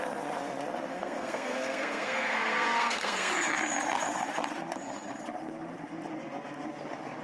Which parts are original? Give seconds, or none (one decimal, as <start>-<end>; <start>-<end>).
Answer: 0.0-0.9; 3.3-7.2